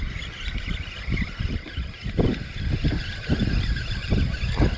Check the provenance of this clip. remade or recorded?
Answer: remade